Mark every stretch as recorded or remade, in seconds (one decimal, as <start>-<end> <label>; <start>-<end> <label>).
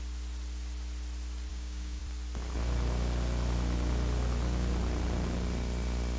0.0-1.5 recorded; 1.5-2.0 remade; 2.0-6.2 recorded